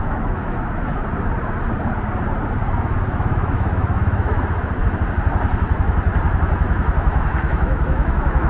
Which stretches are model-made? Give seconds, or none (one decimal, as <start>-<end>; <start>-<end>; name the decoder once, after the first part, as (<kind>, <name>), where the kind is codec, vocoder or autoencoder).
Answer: 0.0-1.0 (autoencoder, DAC-VAE); 3.0-4.8; 6.4-8.5